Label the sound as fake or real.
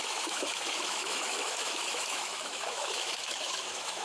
fake